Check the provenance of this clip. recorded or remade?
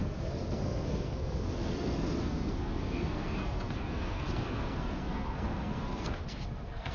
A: remade